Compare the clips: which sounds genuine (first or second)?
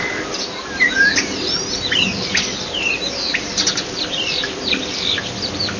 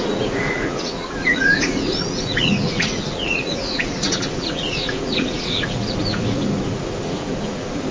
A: first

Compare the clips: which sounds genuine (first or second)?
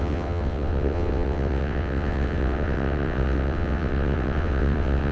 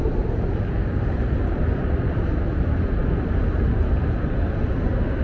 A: second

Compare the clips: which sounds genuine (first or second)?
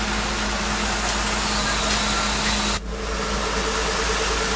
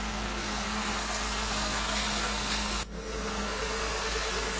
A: first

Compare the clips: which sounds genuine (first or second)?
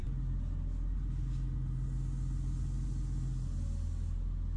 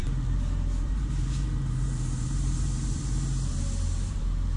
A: first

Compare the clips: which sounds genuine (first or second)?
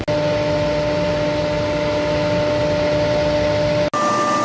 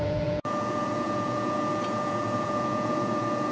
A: first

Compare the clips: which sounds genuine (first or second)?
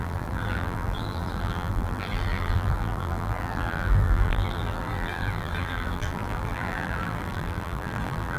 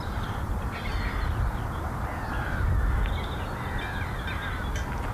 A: second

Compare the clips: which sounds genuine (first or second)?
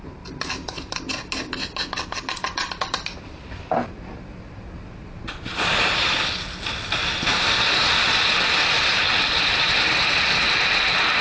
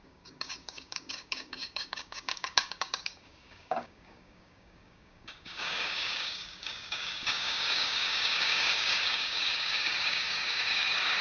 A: first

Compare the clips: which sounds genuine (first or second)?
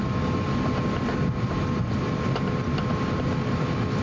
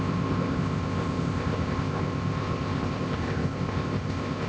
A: first